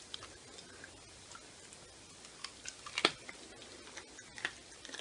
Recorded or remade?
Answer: recorded